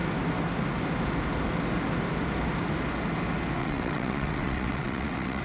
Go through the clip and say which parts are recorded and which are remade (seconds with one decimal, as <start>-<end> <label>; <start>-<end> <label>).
0.0-3.6 recorded; 3.6-5.4 remade